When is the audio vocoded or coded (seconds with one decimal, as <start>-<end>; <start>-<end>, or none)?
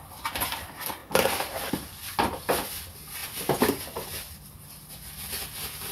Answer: none